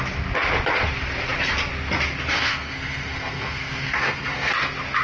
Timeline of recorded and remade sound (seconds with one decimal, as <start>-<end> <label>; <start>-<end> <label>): 0.0-2.4 recorded; 2.4-4.5 remade; 4.5-5.0 recorded